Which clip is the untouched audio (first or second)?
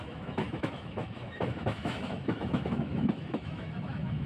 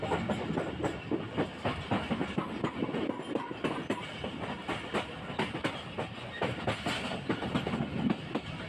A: second